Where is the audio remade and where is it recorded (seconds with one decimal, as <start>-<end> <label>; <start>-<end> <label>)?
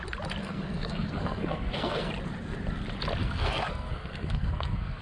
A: 0.0-0.4 recorded; 0.4-2.1 remade; 2.1-3.2 recorded; 3.2-5.0 remade